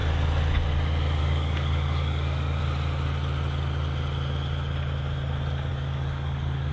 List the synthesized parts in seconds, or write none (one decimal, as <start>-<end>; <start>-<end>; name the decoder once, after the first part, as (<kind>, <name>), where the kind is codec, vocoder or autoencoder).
1.2-2.6 (codec, DAC); 5.7-6.7